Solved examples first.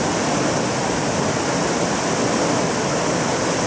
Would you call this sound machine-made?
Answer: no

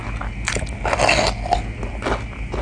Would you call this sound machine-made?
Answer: no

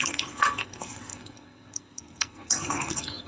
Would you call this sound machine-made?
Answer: yes